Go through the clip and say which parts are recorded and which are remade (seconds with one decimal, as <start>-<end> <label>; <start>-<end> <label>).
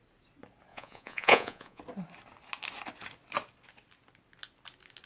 0.0-0.7 recorded; 0.7-1.8 remade; 1.8-5.1 recorded